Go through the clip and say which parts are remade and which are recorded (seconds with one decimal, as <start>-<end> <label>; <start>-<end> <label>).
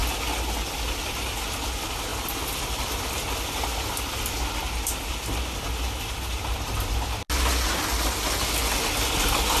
0.0-9.6 recorded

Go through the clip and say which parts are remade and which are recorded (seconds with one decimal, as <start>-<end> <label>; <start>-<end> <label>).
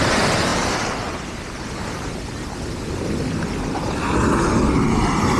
0.0-5.4 recorded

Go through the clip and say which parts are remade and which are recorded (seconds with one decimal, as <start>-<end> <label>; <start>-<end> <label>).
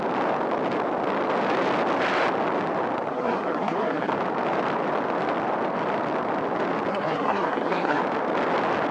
0.0-3.1 recorded; 3.1-4.1 remade; 4.1-6.9 recorded; 6.9-8.0 remade; 8.0-8.9 recorded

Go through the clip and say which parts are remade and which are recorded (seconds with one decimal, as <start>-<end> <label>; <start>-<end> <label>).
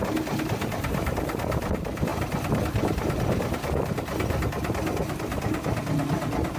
0.0-6.6 recorded